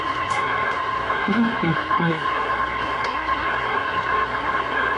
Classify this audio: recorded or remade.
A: remade